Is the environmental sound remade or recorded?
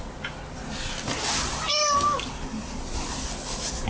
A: recorded